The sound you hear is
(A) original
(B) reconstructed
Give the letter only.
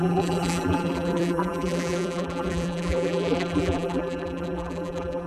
B